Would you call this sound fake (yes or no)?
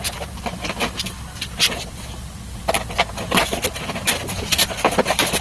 no